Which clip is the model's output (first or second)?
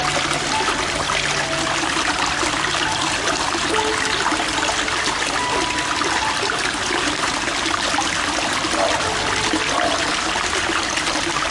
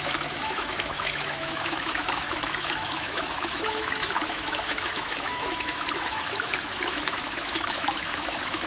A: second